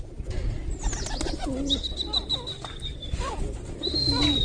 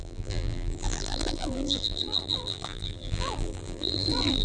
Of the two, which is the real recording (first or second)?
first